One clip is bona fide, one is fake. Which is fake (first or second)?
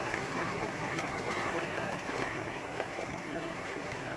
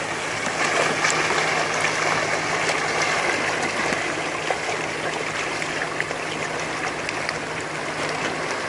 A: first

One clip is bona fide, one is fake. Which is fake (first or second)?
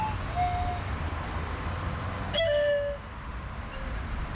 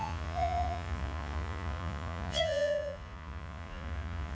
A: second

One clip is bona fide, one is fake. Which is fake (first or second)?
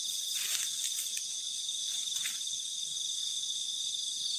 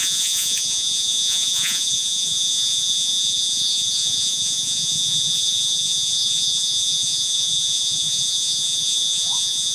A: second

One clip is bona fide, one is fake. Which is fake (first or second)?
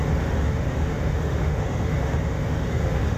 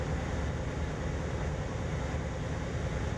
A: first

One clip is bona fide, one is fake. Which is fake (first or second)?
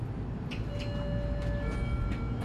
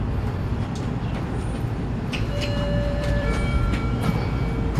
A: second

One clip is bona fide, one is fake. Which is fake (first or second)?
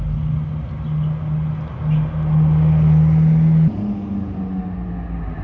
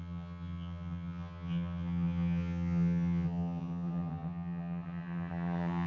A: second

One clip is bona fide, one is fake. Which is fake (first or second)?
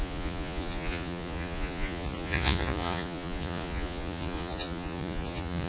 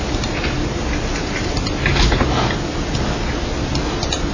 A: first